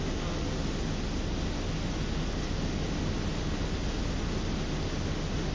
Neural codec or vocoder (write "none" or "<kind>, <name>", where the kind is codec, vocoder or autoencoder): none